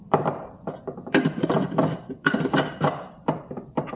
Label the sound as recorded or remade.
remade